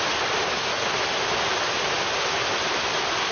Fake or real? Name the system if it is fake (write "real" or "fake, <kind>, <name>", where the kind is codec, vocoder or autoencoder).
real